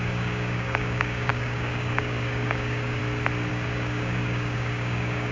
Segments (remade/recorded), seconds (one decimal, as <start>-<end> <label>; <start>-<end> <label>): 0.0-3.0 remade; 3.0-3.5 recorded; 3.5-5.3 remade